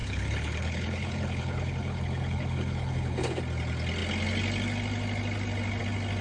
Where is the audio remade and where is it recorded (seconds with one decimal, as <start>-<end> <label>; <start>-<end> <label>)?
0.0-3.4 remade; 3.4-6.2 recorded